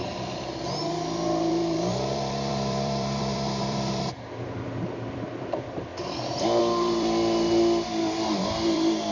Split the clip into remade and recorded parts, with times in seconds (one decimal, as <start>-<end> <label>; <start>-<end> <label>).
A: 0.0-9.1 remade